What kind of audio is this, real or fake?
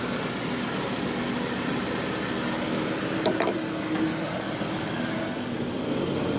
real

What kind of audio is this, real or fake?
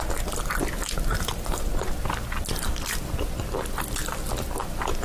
real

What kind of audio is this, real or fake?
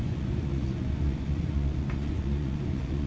fake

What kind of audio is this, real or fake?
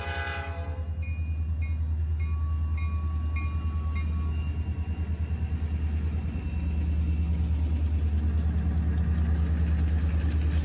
real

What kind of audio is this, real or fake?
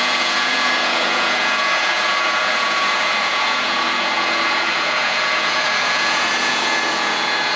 fake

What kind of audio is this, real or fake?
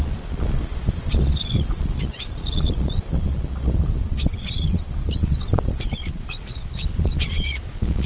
fake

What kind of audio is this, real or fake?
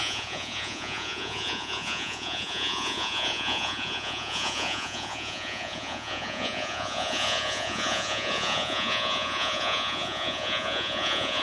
fake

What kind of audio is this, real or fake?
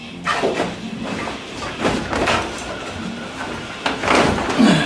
real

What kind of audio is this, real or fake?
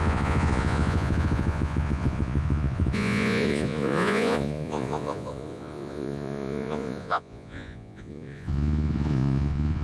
fake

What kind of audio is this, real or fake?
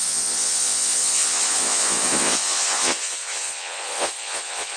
fake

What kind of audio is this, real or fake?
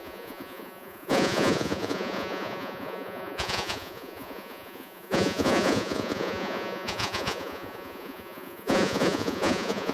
fake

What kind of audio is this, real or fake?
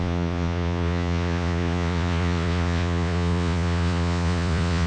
fake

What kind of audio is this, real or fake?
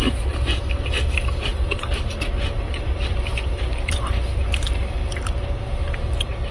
real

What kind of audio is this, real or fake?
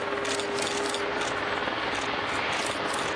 real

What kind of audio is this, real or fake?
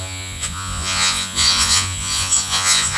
fake